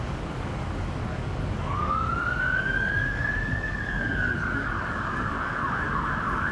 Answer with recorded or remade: remade